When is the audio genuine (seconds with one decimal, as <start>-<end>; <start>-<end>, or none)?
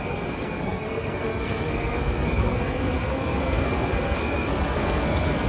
none